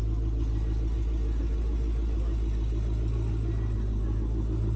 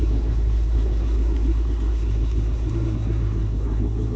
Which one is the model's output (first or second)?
second